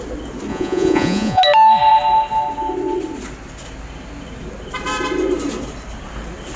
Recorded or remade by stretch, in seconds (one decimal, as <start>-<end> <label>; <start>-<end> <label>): 0.0-0.5 recorded; 0.5-1.4 remade; 1.4-6.6 recorded